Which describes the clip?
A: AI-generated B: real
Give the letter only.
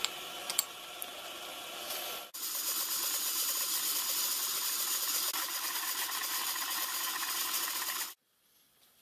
B